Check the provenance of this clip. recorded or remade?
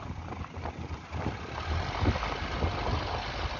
recorded